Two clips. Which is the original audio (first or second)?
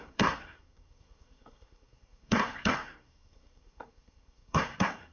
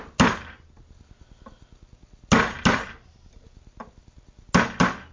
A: second